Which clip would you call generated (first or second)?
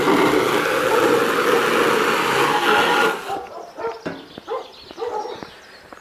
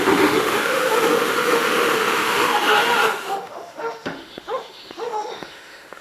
second